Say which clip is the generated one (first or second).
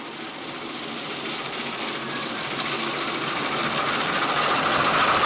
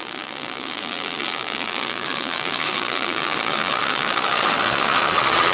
second